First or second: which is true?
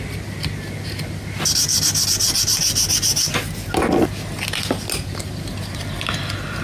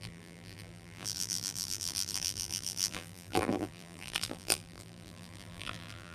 first